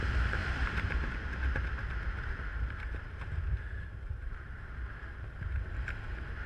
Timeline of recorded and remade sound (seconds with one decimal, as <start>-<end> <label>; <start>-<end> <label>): 0.0-0.4 recorded; 0.4-1.1 remade; 1.1-2.5 recorded; 2.5-4.6 remade; 4.6-6.5 recorded